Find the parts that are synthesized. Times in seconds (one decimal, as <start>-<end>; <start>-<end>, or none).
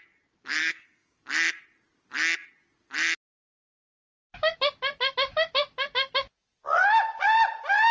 0.6-1.2